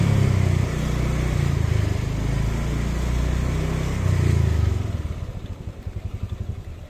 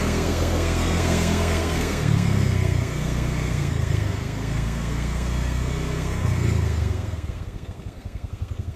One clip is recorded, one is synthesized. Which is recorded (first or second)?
first